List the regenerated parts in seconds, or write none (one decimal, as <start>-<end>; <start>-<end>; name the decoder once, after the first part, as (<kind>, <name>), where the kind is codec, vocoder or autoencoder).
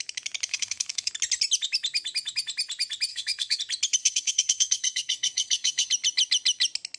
0.5-1.1 (codec, SNAC); 3.1-3.6; 4.0-5.9